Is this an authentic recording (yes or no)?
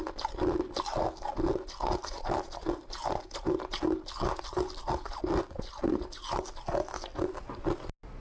yes